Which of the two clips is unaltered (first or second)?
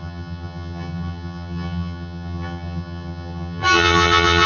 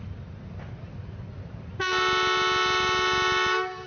second